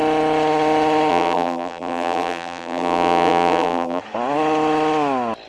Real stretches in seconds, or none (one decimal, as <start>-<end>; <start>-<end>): 0.0-1.1; 4.0-5.5